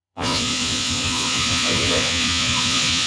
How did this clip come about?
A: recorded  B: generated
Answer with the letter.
B